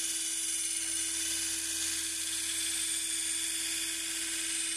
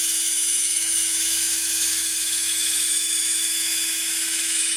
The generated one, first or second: second